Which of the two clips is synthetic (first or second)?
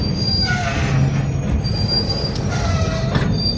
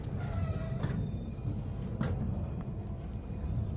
second